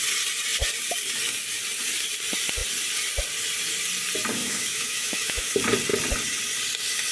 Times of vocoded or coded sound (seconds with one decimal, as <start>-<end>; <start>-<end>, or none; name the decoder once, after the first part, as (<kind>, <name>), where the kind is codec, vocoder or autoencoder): 4.4-5.5 (autoencoder, DAC-VAE)